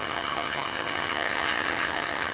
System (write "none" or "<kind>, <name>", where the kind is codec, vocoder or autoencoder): vocoder, HiFi-GAN